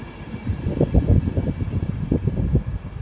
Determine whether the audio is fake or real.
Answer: real